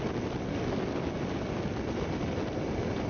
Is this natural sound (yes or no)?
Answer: yes